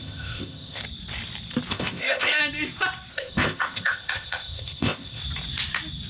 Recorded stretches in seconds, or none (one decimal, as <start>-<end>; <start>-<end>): 0.8-1.7; 2.4-3.1; 5.2-6.1